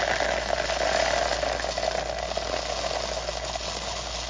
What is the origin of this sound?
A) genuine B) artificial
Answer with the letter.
A